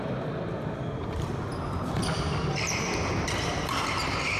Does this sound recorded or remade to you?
remade